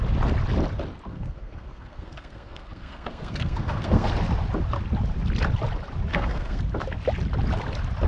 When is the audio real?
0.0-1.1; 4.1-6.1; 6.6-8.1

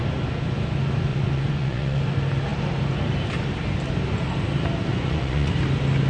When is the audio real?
0.0-1.1; 2.0-4.9; 5.5-6.1

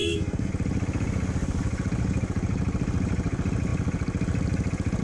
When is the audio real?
0.5-5.0

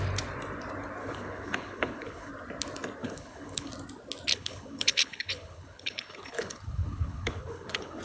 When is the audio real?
0.0-1.0; 2.3-3.0; 3.7-4.3

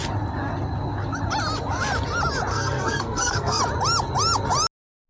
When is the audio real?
0.0-2.5; 3.6-5.1

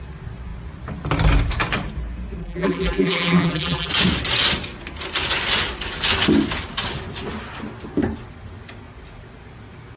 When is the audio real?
0.0-2.4; 3.9-10.0

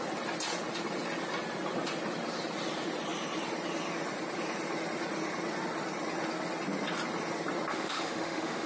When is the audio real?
0.0-7.7